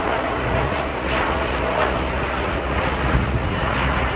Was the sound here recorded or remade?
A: remade